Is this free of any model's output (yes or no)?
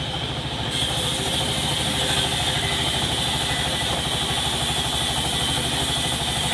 yes